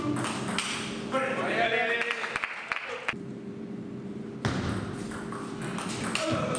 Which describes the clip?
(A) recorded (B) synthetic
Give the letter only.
A